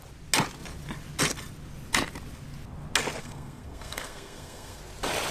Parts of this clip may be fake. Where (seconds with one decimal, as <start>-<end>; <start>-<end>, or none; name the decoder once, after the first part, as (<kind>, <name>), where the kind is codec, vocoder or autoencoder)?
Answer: 3.2-4.8 (codec, SNAC)